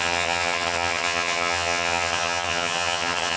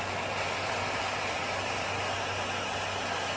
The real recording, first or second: second